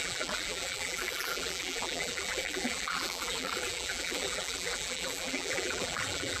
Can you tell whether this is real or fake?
fake